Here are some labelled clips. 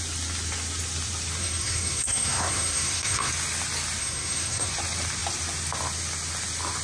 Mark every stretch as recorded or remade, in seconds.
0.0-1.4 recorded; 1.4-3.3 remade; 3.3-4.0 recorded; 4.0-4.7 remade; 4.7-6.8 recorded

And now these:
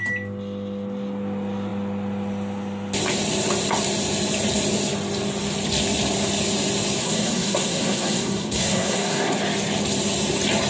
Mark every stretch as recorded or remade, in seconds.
0.0-7.0 recorded; 7.0-9.4 remade; 9.4-10.7 recorded

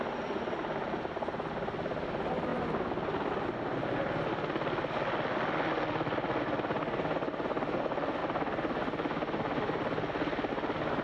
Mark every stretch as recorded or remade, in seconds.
0.0-11.0 recorded